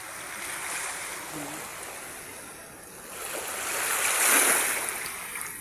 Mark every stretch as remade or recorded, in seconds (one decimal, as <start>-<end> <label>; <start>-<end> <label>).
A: 0.0-0.6 recorded; 0.6-1.1 remade; 1.1-5.6 recorded